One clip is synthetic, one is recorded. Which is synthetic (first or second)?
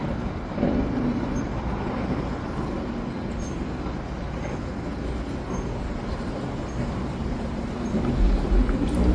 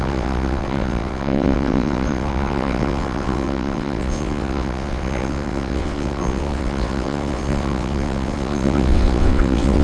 second